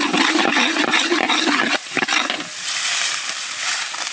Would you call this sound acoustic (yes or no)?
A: yes